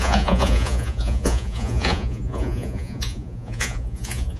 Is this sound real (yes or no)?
no